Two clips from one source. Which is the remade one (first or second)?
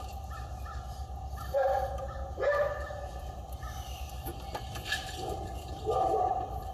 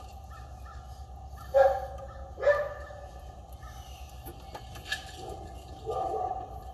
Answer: first